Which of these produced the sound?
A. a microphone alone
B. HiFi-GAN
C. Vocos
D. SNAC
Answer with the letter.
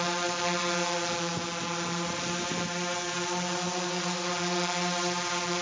A